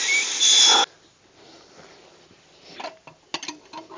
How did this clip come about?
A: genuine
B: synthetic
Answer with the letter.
A